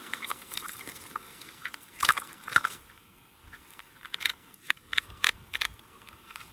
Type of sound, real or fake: fake